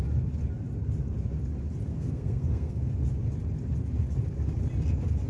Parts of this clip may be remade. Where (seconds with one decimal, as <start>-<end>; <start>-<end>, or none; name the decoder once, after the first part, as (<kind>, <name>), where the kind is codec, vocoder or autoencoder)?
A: 1.9-2.9 (codec, SNAC)